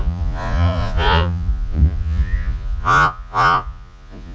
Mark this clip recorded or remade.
remade